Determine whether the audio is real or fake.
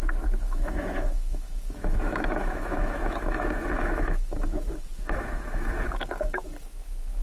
fake